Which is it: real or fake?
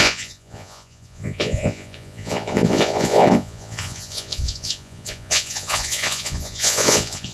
fake